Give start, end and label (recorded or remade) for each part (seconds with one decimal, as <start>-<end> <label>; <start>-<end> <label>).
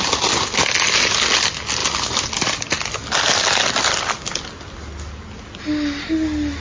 0.0-6.6 recorded